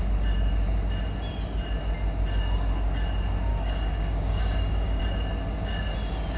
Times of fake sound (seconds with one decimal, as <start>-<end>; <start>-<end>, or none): 3.5-5.0